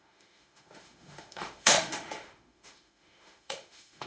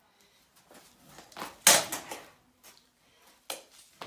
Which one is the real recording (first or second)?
second